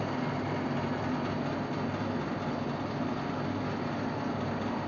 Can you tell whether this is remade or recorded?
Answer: recorded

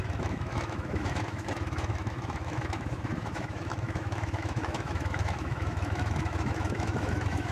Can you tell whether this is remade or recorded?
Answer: remade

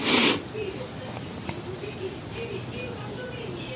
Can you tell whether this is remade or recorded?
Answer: recorded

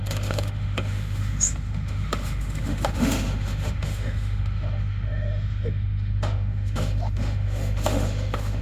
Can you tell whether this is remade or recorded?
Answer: remade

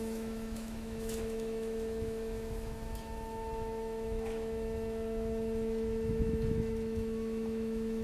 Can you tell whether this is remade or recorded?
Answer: remade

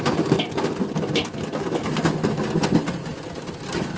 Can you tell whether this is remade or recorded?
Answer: recorded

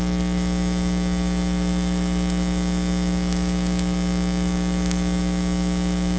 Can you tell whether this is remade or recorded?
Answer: remade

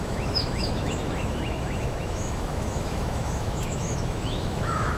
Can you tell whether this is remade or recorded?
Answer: remade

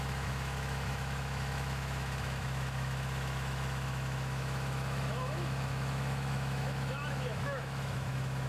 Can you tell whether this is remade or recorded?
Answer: remade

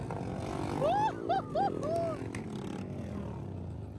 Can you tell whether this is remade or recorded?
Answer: recorded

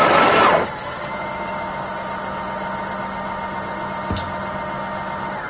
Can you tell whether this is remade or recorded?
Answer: recorded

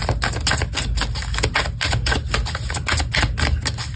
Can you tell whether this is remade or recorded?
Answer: recorded